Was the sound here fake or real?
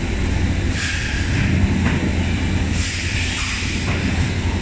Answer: fake